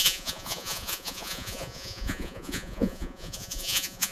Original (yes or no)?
no